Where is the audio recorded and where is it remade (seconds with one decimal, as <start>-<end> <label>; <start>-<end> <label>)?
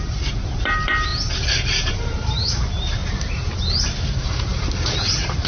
0.0-1.1 remade; 1.1-1.9 recorded; 1.9-3.0 remade; 3.0-4.0 recorded; 4.0-5.5 remade